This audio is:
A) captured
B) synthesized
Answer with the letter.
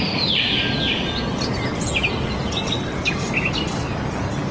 A